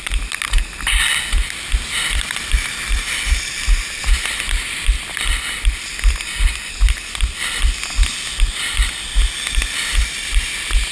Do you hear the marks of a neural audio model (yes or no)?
no